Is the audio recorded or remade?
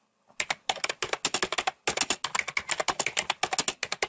recorded